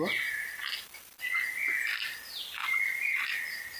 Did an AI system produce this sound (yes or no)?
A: no